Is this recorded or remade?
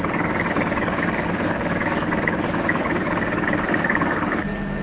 remade